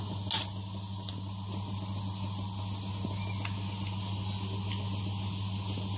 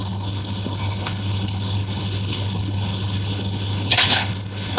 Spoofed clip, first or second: second